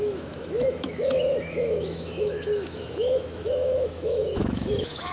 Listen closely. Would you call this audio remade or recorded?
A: remade